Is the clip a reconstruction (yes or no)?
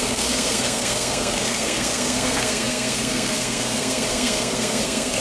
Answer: yes